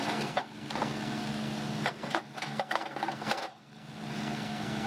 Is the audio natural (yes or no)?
no